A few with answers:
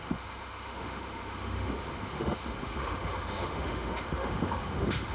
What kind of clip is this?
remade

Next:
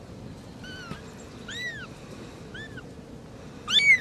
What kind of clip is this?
recorded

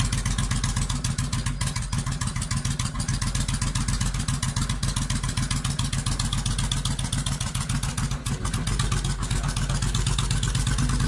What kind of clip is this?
recorded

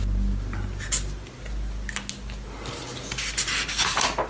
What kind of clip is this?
recorded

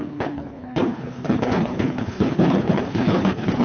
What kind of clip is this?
remade